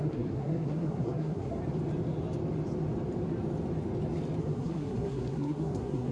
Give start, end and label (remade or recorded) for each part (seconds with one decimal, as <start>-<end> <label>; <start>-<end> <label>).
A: 0.0-1.6 remade; 1.6-4.4 recorded; 4.4-6.1 remade